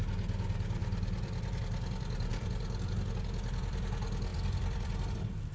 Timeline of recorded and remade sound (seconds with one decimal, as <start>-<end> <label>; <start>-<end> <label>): 0.0-0.8 recorded; 0.8-1.6 remade; 1.6-2.3 recorded; 2.3-2.9 remade; 2.9-4.3 recorded; 4.3-5.1 remade; 5.1-5.5 recorded